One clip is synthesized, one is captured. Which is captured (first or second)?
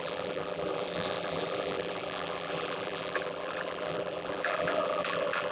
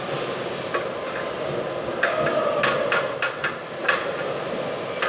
second